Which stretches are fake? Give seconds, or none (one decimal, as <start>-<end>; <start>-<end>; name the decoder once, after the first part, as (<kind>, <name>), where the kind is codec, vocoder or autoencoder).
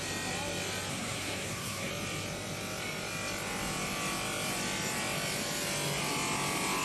0.9-1.9 (codec, SNAC)